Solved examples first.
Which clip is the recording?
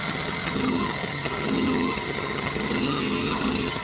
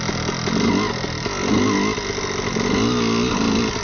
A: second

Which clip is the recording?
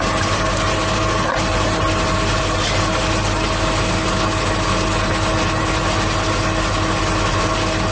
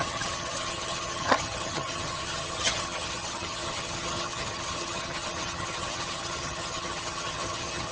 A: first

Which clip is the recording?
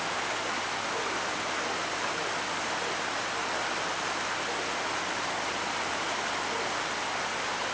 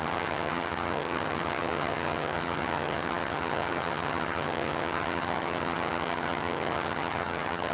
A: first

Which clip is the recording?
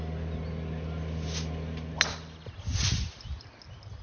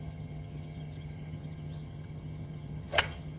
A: first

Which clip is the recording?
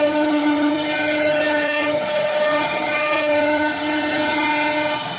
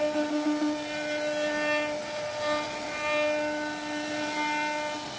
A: second